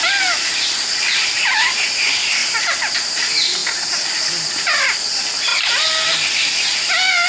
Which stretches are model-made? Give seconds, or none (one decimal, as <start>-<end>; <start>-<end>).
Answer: 0.0-2.4; 3.1-7.3